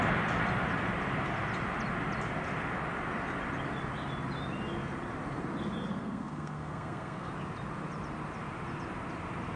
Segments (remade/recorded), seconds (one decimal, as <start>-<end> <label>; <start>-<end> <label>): 0.0-5.9 recorded; 5.9-7.3 remade; 7.3-9.6 recorded